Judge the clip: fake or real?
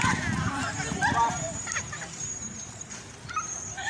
real